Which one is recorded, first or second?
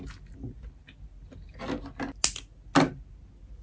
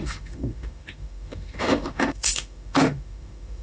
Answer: first